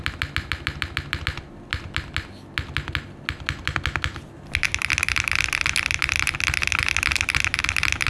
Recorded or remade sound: recorded